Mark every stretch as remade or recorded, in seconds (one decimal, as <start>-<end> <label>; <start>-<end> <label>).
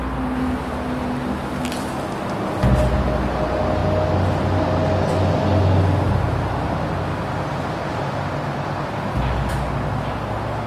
0.0-10.7 recorded